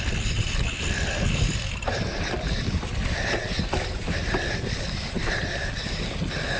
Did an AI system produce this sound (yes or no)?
no